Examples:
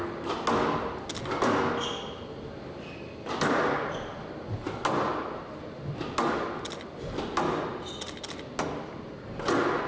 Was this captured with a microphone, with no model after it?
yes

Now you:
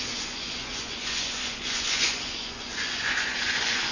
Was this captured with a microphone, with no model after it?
no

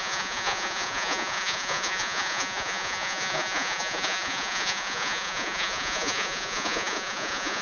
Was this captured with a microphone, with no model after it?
no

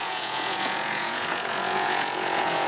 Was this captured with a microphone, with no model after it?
no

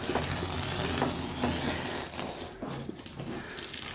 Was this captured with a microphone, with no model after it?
yes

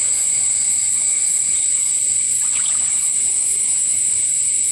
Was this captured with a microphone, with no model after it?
no